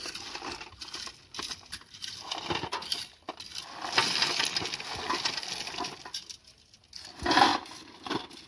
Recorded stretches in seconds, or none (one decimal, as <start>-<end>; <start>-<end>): 0.0-8.5

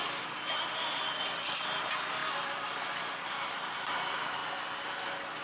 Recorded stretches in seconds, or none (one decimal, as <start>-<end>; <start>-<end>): 0.0-2.2; 3.9-5.4

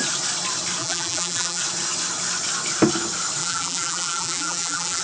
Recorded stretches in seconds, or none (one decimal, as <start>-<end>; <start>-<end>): 0.0-0.8; 1.6-3.4

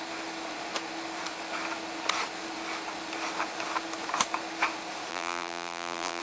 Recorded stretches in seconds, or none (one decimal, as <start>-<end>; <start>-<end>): 0.0-5.1